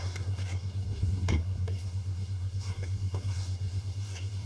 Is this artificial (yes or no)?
yes